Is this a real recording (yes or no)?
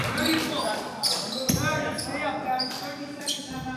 yes